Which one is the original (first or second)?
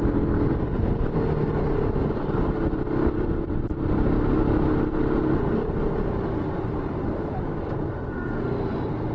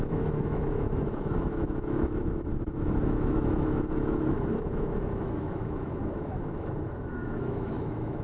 first